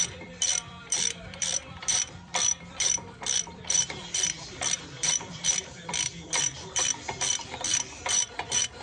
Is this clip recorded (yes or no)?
no